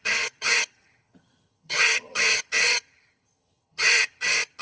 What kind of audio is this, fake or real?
fake